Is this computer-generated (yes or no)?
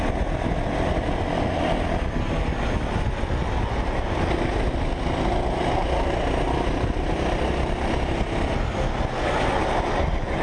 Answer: no